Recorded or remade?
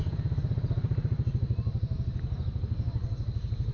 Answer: recorded